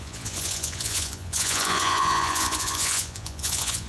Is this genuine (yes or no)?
no